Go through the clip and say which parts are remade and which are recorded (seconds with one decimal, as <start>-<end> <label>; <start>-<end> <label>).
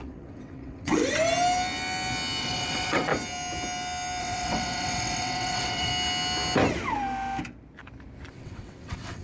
0.0-1.0 remade; 1.0-2.4 recorded; 2.4-3.1 remade; 3.1-4.2 recorded; 4.2-5.9 remade; 5.9-8.3 recorded; 8.3-9.2 remade